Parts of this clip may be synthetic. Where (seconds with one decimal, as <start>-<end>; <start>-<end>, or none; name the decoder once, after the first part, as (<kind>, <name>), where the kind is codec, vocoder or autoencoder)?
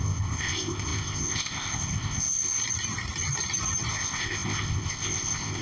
0.0-2.6 (codec, ZipCodec); 3.9-5.6